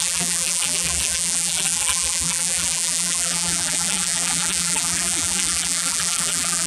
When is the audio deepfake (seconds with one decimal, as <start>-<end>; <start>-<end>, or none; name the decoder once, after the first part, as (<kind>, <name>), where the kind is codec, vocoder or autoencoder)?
0.0-6.7 (vocoder, BigVGAN v2)